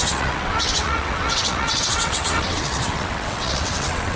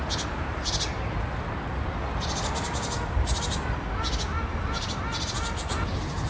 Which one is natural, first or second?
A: second